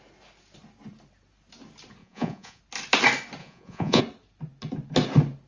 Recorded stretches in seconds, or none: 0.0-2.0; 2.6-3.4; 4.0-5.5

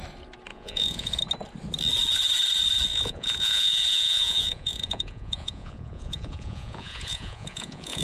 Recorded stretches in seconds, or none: 0.0-0.5; 1.2-2.9

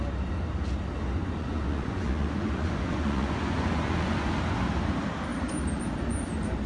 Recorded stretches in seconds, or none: 0.0-1.2; 4.3-6.7

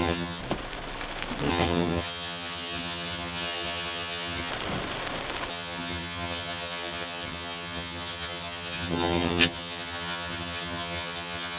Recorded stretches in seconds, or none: 0.4-1.5; 4.5-5.5